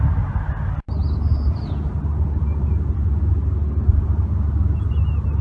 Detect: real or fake real